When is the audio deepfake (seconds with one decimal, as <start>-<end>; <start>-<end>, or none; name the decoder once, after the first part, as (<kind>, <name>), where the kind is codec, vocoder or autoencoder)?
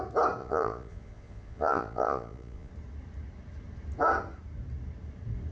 0.4-2.7 (vocoder, Vocos)